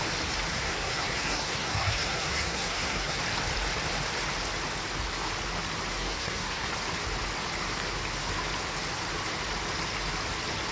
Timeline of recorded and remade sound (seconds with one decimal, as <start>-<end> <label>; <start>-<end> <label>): 0.0-0.5 recorded; 0.5-3.2 remade; 3.2-6.0 recorded; 6.0-6.7 remade; 6.7-10.7 recorded